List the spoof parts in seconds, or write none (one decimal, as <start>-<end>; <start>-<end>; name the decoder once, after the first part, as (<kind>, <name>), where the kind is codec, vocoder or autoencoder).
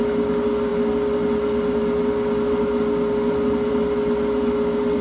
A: none